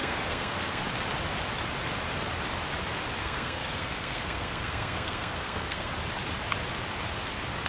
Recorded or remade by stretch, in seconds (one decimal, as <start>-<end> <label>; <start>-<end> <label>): 0.0-0.8 remade; 0.8-3.2 recorded; 3.2-5.9 remade; 5.9-7.7 recorded